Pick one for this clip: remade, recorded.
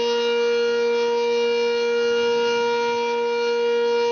recorded